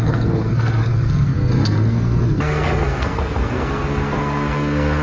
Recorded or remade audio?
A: remade